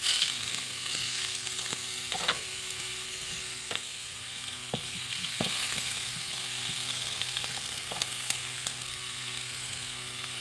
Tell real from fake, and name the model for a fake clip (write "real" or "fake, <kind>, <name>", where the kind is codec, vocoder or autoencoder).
fake, codec, SNAC